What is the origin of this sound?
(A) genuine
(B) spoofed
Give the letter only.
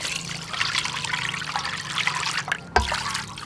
A